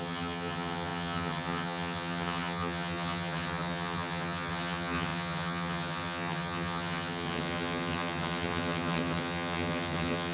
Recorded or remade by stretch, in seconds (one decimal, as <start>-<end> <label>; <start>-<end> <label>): 0.0-10.3 remade